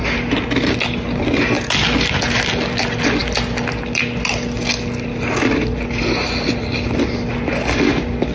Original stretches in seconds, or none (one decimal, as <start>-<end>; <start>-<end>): 0.0-8.3